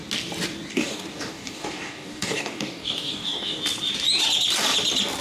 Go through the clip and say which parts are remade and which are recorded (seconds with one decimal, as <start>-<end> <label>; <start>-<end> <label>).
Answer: 0.0-0.7 recorded; 0.7-3.6 remade; 3.6-5.2 recorded